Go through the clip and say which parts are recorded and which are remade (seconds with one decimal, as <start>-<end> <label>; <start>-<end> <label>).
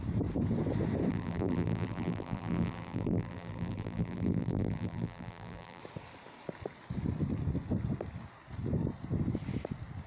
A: 0.0-1.1 recorded; 1.1-5.8 remade; 5.8-10.1 recorded